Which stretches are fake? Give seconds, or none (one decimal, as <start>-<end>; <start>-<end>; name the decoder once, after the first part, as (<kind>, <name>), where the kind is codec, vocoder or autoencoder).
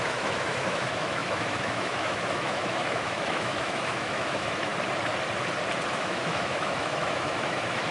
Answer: 0.0-4.7 (autoencoder, DAC-VAE); 5.9-7.9